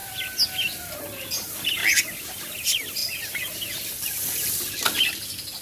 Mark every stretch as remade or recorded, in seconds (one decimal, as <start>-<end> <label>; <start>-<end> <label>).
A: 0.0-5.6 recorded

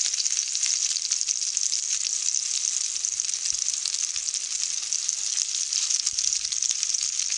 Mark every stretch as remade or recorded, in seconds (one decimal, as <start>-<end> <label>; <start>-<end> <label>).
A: 0.0-7.4 recorded

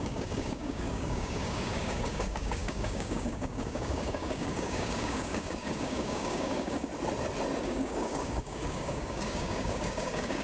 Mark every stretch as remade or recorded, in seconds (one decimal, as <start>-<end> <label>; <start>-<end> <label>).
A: 0.0-6.9 remade; 6.9-7.6 recorded; 7.6-10.4 remade

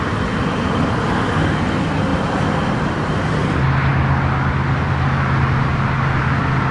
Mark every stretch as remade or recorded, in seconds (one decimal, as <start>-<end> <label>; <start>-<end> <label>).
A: 0.0-6.7 recorded

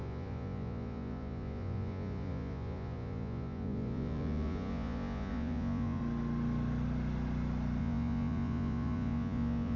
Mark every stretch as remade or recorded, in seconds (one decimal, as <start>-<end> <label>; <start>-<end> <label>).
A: 0.0-6.0 remade; 6.0-7.8 recorded; 7.8-9.8 remade

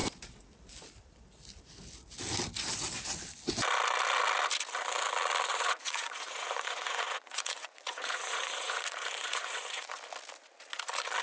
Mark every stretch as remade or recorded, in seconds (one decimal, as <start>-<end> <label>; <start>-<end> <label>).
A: 0.0-5.5 recorded; 5.5-9.9 remade; 9.9-11.2 recorded

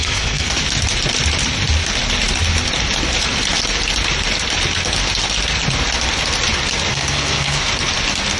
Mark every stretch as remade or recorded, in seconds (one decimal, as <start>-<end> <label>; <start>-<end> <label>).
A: 0.0-0.6 remade; 0.6-6.9 recorded; 6.9-7.6 remade; 7.6-8.4 recorded